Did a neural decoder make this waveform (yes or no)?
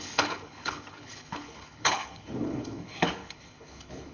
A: yes